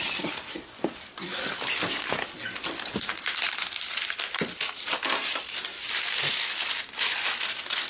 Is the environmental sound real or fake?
real